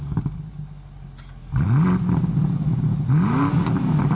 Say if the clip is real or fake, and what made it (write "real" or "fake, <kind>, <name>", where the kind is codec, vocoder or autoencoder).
real